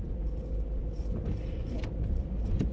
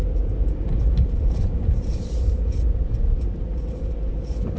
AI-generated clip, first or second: second